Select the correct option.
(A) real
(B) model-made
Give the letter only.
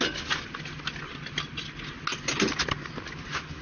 A